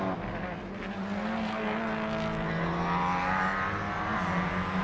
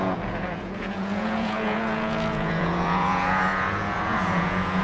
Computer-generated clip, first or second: second